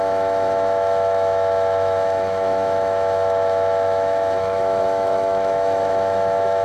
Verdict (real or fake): fake